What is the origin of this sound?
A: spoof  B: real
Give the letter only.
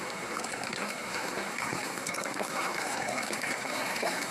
A